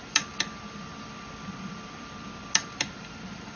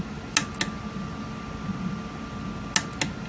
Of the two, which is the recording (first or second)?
second